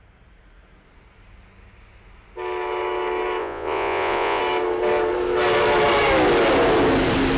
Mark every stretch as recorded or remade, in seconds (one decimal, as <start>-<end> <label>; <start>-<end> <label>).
0.0-3.4 recorded; 3.4-4.4 remade; 4.4-7.4 recorded